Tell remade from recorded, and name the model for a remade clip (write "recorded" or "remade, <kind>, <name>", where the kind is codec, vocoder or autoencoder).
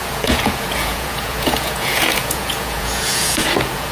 remade, vocoder, Vocos